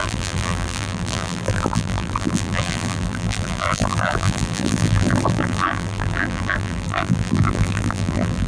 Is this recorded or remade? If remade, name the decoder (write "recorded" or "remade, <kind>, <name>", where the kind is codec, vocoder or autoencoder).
remade, vocoder, BigVGAN v2